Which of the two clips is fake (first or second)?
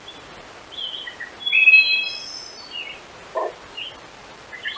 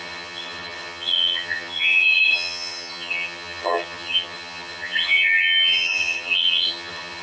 second